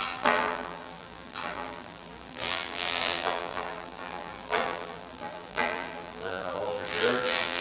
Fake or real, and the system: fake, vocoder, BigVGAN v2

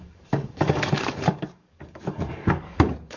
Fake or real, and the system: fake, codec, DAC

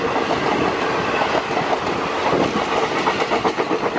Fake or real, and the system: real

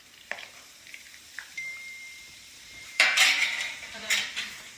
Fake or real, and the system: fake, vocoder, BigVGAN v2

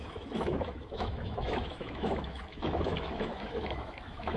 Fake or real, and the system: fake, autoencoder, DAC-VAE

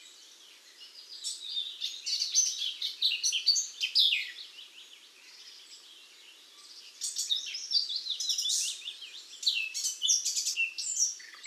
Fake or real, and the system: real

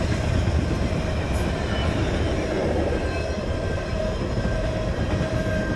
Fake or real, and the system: real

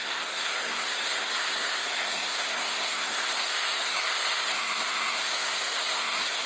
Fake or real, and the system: fake, codec, SNAC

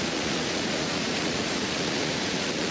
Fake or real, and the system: fake, vocoder, Vocos